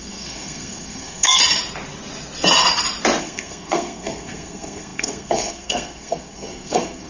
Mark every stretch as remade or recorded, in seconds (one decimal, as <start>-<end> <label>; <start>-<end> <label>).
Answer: 0.0-1.4 remade; 1.4-3.2 recorded; 3.2-7.1 remade